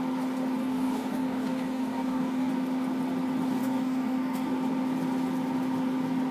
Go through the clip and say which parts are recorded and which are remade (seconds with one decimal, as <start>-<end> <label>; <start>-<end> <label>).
0.0-0.6 recorded; 0.6-2.5 remade; 2.5-3.6 recorded; 3.6-4.5 remade; 4.5-6.3 recorded